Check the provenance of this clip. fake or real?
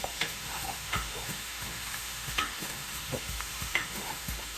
fake